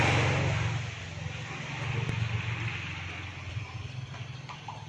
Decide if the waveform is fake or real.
real